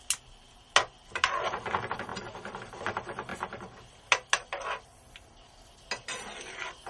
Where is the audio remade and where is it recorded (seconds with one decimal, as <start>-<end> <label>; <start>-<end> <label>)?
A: 0.0-3.3 recorded; 3.3-4.0 remade; 4.0-6.9 recorded